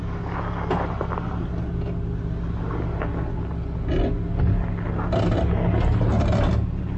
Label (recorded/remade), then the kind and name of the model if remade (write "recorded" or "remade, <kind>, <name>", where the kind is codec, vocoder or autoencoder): recorded